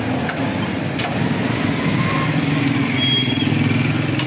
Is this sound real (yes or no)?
yes